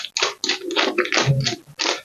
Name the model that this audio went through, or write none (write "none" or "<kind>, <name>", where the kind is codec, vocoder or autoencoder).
none